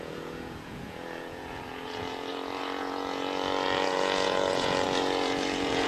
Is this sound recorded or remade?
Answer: remade